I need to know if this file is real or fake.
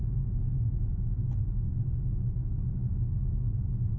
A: fake